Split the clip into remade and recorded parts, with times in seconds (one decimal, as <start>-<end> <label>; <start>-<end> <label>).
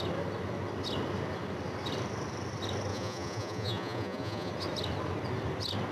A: 0.0-2.9 recorded; 2.9-4.5 remade; 4.5-5.9 recorded